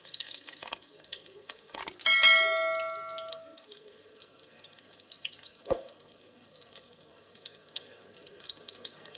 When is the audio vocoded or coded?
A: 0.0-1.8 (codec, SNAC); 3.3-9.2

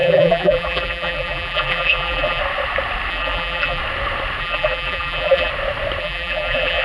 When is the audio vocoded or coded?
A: 0.0-2.4 (vocoder, BigVGAN v2); 3.1-3.8; 4.4-5.5; 6.0-6.8

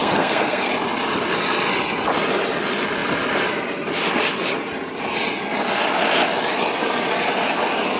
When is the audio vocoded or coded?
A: 0.0-0.7 (codec, SNAC)

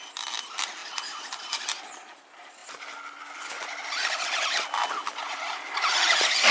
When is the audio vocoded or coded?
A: none

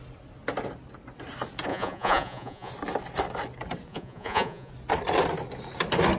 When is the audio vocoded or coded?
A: 1.7-2.7 (vocoder, Vocos); 3.9-4.7

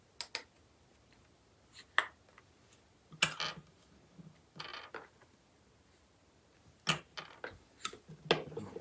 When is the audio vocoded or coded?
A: none